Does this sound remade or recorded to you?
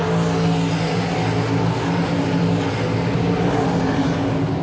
recorded